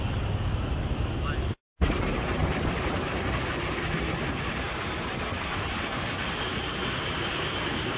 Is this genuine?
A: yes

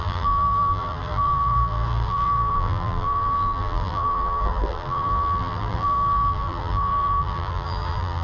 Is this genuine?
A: no